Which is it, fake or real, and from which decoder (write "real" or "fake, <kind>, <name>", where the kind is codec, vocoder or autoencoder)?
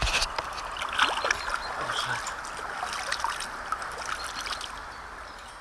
real